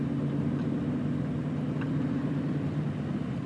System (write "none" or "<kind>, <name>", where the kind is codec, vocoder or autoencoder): none